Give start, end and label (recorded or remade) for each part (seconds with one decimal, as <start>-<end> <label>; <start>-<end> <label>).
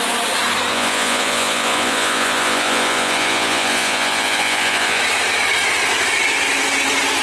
0.0-0.7 recorded; 0.7-5.0 remade; 5.0-7.2 recorded